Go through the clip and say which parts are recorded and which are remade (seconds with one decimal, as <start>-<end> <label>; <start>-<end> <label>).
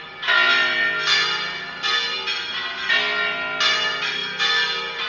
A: 0.0-5.1 recorded